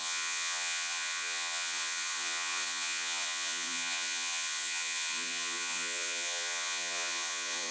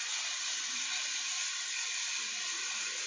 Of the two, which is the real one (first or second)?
second